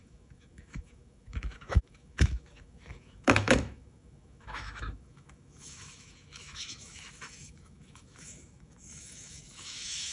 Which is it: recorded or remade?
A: remade